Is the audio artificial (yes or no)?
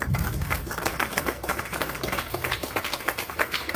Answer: yes